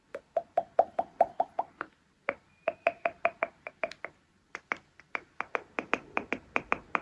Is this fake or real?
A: real